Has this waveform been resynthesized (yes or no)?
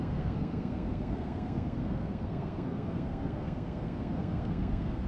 yes